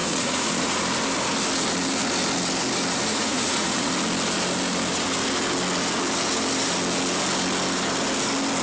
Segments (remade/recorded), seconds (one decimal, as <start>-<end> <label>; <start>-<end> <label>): 0.0-0.8 remade; 0.8-3.1 recorded; 3.1-3.9 remade; 3.9-8.6 recorded